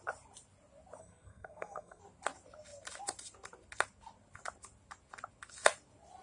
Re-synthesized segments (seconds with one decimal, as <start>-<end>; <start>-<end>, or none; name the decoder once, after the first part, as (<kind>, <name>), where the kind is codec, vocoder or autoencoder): 1.0-2.0 (codec, SNAC)

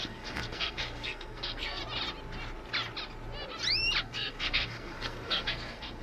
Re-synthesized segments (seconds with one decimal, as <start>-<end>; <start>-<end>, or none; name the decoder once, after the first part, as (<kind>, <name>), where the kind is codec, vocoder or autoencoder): 0.0-1.8 (codec, SNAC); 4.0-6.0

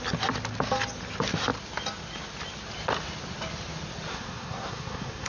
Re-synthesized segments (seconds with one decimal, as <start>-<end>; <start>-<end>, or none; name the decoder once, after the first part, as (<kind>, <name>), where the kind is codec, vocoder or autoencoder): 4.1-5.3 (codec, SNAC)

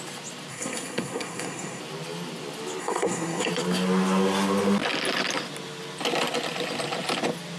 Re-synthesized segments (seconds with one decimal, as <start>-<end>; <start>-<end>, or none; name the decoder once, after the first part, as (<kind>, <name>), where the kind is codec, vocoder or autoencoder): 0.5-1.8 (codec, SNAC); 2.8-3.5

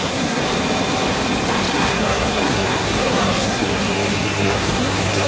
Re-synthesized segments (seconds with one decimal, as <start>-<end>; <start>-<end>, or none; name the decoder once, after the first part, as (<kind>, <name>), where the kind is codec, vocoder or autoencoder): 0.0-0.4 (codec, SNAC); 1.7-5.3